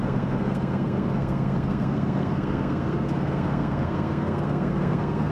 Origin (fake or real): fake